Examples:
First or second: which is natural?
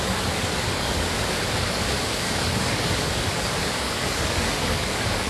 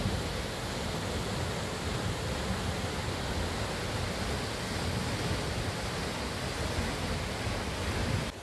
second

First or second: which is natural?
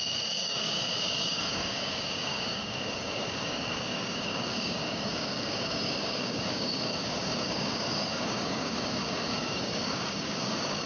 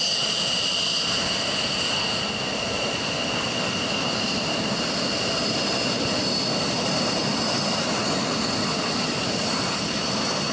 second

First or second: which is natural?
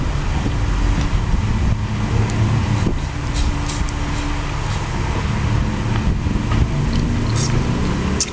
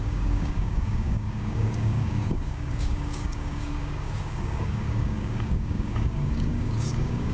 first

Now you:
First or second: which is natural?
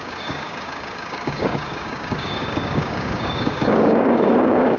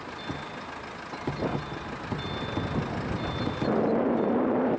second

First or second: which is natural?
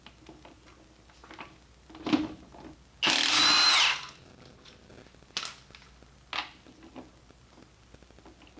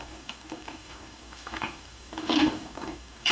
first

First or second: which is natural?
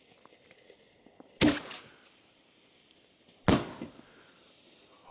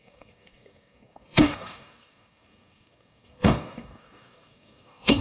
first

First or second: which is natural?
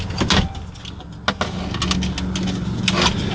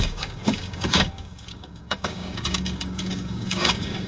first